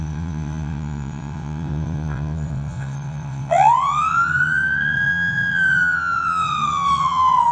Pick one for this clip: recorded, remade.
remade